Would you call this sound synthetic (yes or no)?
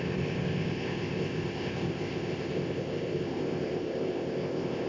yes